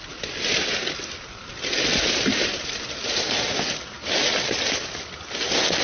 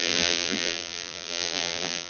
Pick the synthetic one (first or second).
second